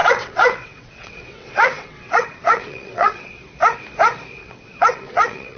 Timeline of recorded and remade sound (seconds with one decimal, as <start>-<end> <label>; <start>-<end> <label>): 0.0-3.4 remade; 3.4-4.4 recorded; 4.4-5.6 remade